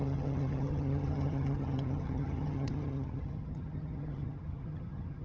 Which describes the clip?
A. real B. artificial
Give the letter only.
B